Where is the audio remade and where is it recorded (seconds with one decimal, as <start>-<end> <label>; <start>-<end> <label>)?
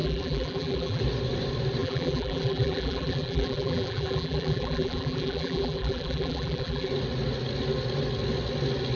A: 0.0-1.0 remade; 1.0-1.8 recorded; 1.8-6.9 remade; 6.9-9.0 recorded